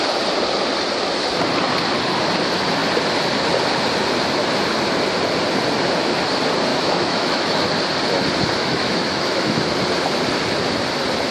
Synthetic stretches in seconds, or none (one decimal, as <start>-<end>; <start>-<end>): 6.7-7.6; 8.6-9.6

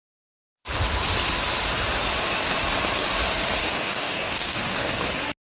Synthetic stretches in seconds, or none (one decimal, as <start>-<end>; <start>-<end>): 3.6-5.1

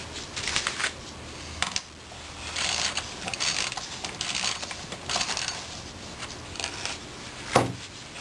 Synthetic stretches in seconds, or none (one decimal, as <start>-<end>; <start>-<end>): none

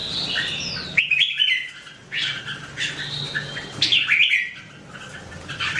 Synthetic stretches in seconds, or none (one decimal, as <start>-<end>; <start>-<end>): 0.0-1.0; 5.1-5.8

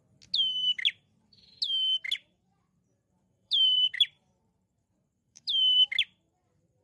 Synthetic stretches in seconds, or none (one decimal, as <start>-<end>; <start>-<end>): 2.5-5.6

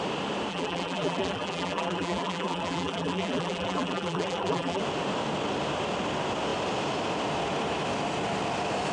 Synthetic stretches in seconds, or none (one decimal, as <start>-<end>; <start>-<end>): 0.5-4.8

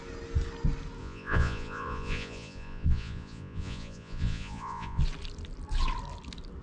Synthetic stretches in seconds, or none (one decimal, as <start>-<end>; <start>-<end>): 1.0-5.0